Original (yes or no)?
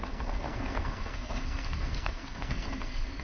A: no